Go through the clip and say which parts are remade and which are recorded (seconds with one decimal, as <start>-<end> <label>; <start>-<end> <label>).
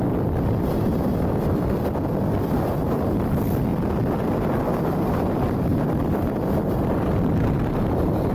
0.0-1.1 remade; 1.1-3.2 recorded; 3.2-8.3 remade